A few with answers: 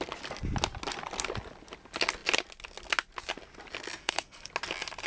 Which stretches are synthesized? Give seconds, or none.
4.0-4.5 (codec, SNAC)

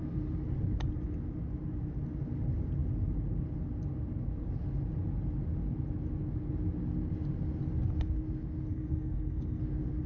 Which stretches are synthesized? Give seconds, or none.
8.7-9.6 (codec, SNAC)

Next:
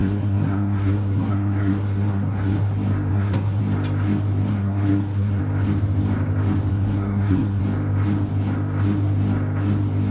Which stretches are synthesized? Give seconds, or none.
0.0-2.7 (codec, SNAC); 3.1-3.6; 4.5-5.4; 6.7-7.6

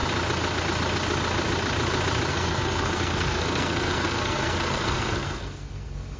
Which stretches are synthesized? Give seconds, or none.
2.3-6.2 (codec, SNAC)

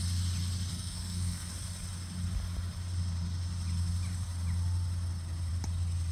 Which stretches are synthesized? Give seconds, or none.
0.7-1.5 (codec, SNAC)